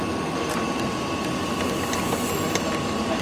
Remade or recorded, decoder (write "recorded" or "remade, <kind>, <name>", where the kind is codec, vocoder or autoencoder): remade, vocoder, BigVGAN v2